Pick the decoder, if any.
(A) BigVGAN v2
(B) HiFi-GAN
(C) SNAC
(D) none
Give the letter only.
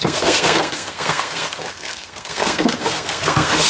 C